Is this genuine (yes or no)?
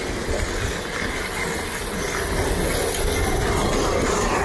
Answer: yes